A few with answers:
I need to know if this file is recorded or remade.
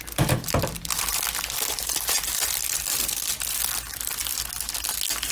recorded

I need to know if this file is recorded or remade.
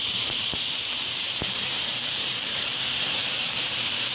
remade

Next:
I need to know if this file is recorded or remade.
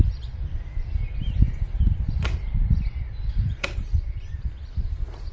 remade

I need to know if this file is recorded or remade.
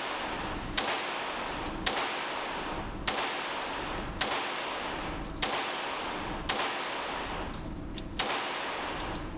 recorded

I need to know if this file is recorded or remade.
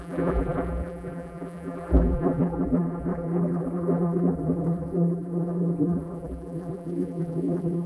remade